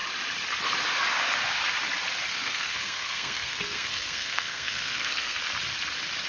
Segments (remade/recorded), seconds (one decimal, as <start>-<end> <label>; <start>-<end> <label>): 0.0-2.3 recorded; 2.3-5.4 remade; 5.4-6.3 recorded